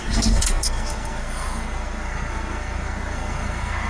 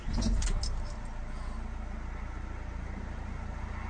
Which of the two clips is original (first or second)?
second